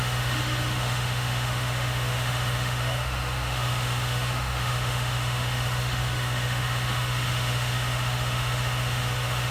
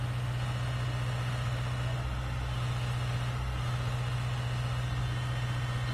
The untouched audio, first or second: second